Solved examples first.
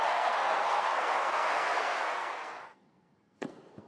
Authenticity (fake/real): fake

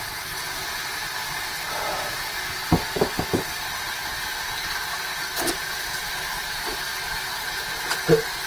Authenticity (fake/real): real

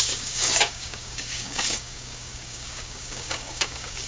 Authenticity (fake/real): fake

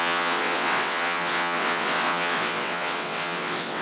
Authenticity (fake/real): fake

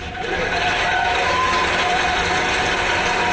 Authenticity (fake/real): real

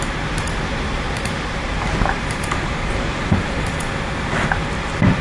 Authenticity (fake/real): fake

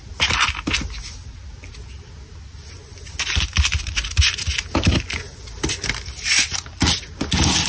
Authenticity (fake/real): real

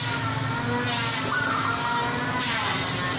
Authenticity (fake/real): real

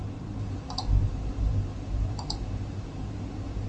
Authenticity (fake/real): fake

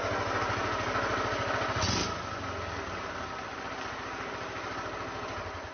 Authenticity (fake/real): real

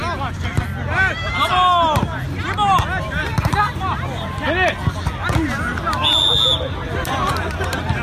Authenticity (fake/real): real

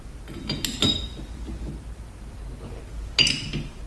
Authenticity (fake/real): real